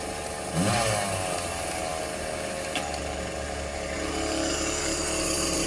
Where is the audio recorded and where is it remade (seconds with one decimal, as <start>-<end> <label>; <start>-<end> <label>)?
0.0-5.7 recorded